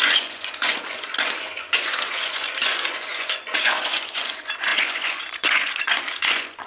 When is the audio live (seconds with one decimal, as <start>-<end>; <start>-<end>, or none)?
none